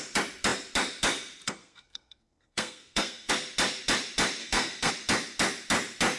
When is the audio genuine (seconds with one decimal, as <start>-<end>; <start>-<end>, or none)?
0.0-1.6; 3.3-4.4; 4.9-6.2